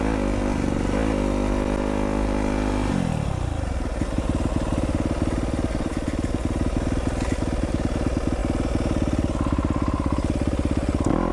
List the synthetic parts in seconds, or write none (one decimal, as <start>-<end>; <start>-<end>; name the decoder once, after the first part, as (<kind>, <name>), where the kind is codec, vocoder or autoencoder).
none